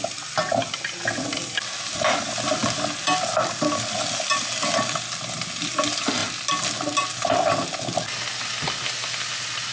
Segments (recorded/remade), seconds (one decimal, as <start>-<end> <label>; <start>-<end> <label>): 0.0-9.7 recorded